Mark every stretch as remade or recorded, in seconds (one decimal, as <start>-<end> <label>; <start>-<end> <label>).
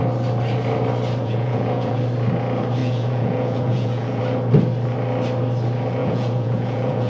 0.0-1.2 recorded; 1.2-2.0 remade; 2.0-2.8 recorded; 2.8-4.2 remade; 4.2-6.0 recorded; 6.0-7.1 remade